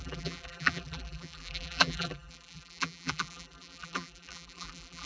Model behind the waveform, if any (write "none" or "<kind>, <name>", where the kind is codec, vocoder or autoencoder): vocoder, BigVGAN v2